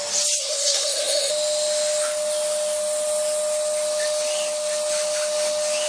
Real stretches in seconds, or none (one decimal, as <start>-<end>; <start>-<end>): 0.0-0.4; 1.3-5.9